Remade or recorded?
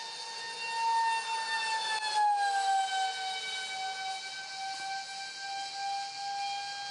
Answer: recorded